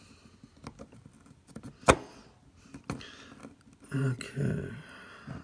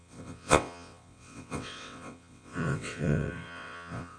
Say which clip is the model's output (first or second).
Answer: second